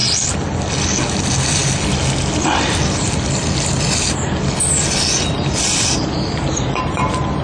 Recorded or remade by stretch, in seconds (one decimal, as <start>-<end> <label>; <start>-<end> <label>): 0.0-7.4 recorded